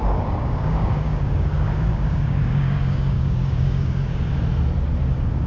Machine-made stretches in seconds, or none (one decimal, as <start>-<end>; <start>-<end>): 0.0-4.3; 5.1-5.5